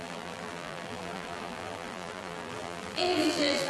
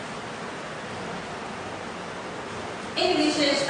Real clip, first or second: second